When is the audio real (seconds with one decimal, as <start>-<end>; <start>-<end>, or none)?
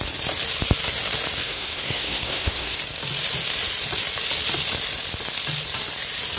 0.0-1.4; 2.8-6.4